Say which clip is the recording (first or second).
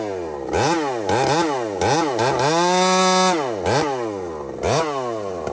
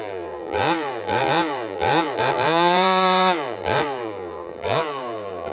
first